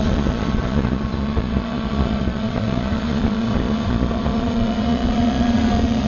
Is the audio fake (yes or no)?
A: yes